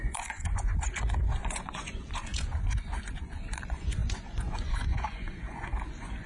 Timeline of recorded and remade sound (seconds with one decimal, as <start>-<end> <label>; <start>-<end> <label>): 0.0-6.3 remade